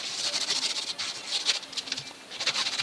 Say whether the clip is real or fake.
real